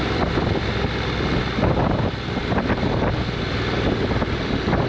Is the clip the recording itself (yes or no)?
yes